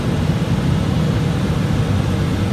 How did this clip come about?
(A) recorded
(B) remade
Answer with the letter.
A